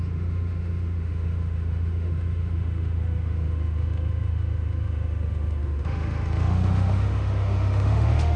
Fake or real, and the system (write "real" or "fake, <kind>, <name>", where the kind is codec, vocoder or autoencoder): fake, autoencoder, DAC-VAE